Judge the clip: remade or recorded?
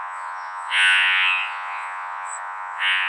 remade